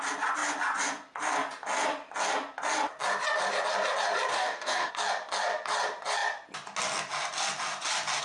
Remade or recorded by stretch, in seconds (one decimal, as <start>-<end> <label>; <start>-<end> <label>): 0.0-4.3 recorded; 4.3-4.9 remade; 4.9-8.2 recorded